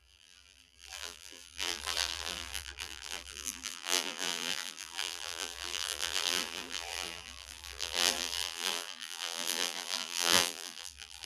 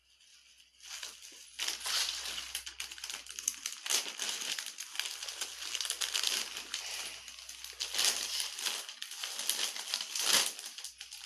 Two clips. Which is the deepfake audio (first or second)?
first